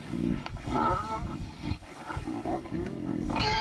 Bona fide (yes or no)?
no